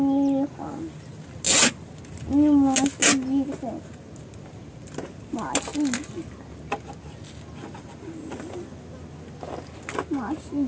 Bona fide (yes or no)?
yes